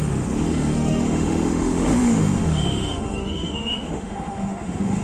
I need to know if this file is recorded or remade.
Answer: remade